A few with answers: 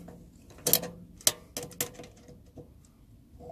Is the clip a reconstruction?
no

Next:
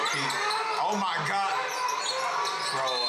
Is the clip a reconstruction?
no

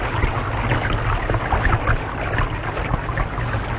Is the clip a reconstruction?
no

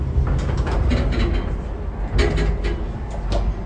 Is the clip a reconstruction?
no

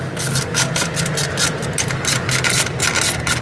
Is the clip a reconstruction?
no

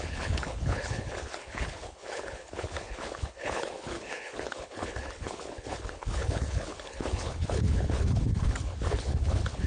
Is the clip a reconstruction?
yes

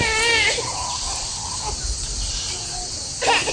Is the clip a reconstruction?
no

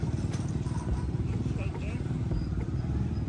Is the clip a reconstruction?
yes